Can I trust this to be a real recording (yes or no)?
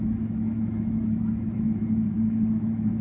no